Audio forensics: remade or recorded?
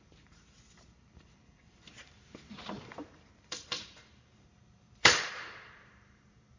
remade